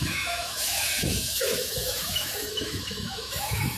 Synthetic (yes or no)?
yes